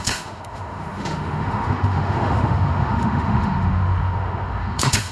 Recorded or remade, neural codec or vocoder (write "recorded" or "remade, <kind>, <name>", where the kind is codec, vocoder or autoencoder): remade, autoencoder, DAC-VAE